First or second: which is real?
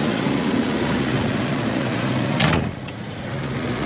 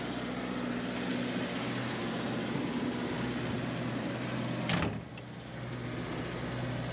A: second